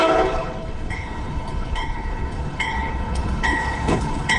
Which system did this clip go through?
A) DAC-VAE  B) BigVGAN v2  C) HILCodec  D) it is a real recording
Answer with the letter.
C